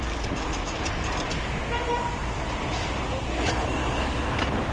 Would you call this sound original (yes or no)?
yes